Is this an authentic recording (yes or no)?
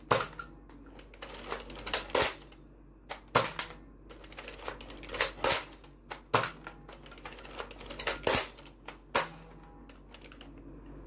yes